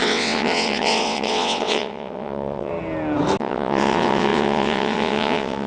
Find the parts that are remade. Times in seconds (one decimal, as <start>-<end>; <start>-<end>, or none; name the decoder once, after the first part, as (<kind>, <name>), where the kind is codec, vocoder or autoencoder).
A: 0.0-2.7 (vocoder, WaveNeXt); 3.4-5.7